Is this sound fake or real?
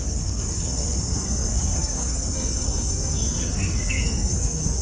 fake